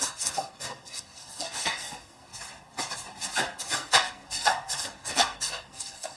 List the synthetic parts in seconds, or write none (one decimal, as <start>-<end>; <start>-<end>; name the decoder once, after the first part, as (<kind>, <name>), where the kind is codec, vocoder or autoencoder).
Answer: 0.0-2.3 (codec, SNAC); 3.6-6.2

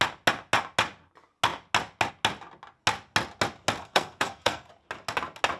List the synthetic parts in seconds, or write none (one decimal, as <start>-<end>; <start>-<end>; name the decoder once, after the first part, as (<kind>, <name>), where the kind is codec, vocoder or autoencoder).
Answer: 3.8-4.7 (codec, SNAC)

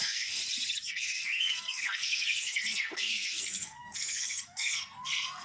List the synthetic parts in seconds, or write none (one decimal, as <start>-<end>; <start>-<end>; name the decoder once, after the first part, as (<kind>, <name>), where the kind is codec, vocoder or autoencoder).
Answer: 0.0-0.4 (codec, SNAC); 0.9-5.4

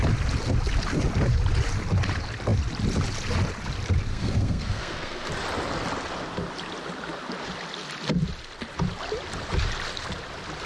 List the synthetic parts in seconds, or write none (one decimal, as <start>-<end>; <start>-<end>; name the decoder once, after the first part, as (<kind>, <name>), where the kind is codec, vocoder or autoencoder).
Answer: 4.1-5.3 (codec, SNAC)

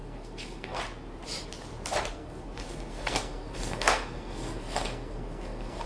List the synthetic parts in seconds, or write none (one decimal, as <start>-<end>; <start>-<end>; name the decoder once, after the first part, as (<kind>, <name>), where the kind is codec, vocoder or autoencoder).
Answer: 0.0-0.8 (codec, SNAC); 2.1-5.9

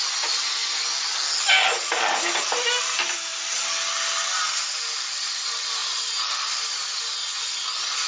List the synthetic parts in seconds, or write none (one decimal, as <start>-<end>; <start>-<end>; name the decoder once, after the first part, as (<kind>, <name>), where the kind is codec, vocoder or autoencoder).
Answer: none